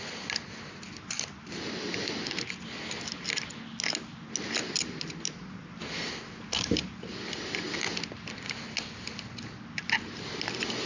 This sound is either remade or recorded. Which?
recorded